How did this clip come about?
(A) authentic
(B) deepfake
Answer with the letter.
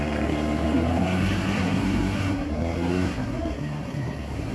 B